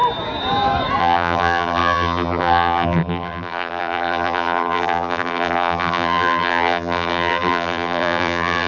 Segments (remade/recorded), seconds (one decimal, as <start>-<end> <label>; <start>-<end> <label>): 0.0-1.0 recorded; 1.0-8.7 remade